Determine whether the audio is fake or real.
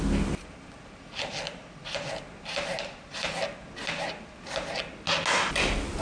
real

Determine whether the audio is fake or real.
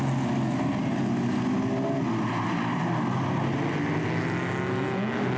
real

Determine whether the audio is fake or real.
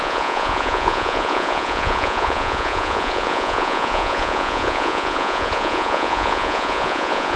fake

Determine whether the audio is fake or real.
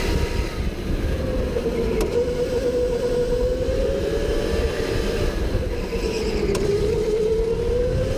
real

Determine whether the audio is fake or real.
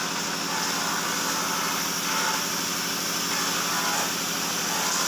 real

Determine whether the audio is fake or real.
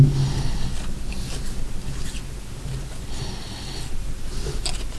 real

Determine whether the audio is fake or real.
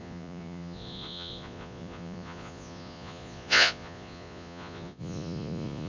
fake